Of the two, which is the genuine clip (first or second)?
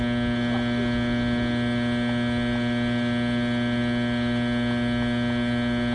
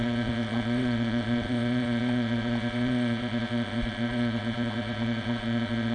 first